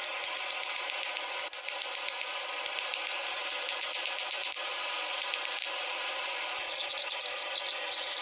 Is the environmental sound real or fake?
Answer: real